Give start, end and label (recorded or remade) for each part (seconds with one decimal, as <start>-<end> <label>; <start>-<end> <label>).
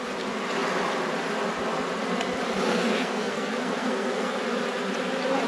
0.0-2.7 recorded; 2.7-4.4 remade; 4.4-5.5 recorded